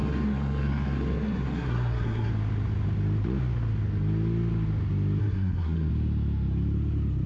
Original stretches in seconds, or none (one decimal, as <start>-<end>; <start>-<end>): 2.3-5.2; 5.9-7.3

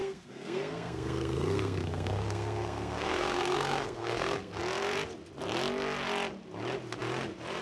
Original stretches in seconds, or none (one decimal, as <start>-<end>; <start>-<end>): 4.6-7.6

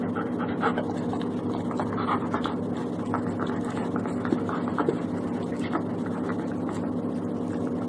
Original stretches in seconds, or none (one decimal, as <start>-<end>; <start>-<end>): 0.0-7.9